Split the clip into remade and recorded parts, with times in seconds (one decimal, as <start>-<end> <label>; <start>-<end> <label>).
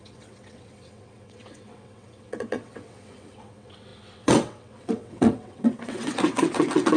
0.0-7.0 remade